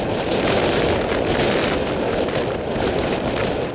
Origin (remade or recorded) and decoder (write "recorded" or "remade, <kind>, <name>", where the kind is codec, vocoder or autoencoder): recorded